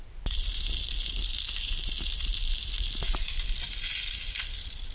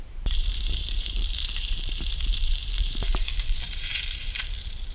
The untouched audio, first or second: first